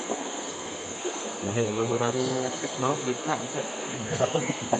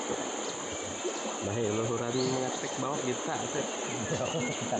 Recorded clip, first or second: second